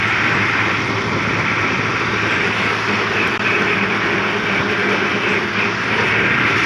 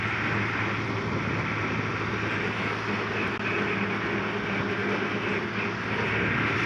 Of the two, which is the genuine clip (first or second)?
second